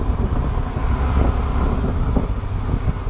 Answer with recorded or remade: recorded